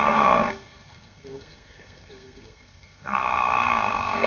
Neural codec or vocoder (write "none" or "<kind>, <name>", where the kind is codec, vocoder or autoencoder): codec, SNAC